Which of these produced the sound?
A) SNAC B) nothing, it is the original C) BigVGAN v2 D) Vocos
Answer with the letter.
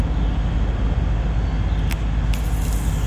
B